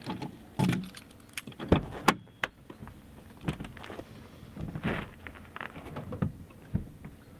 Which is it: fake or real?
real